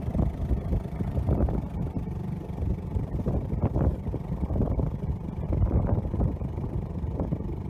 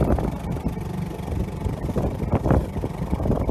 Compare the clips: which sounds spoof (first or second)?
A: first